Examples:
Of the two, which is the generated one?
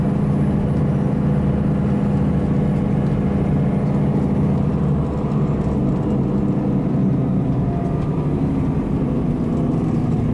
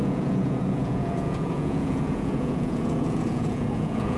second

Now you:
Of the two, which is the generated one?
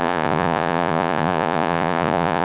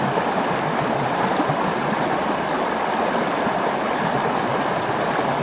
first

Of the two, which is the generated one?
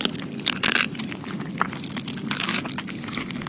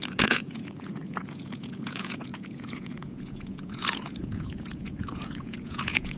second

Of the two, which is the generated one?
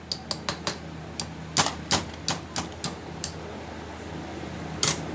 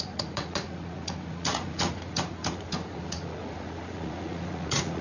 second